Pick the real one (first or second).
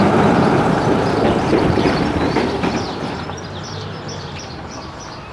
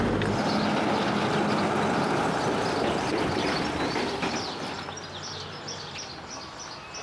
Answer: second